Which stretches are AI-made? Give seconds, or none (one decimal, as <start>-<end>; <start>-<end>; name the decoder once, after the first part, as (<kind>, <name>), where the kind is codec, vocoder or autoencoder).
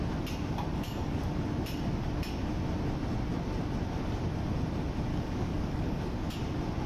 0.7-1.2 (codec, DAC); 5.1-6.3